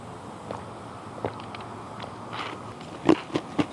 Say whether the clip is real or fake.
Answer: real